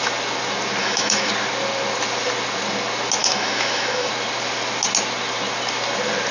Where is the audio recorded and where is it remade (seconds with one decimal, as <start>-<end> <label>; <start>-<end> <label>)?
0.0-0.8 recorded; 0.8-1.3 remade; 1.3-3.2 recorded; 3.2-4.1 remade; 4.1-6.3 recorded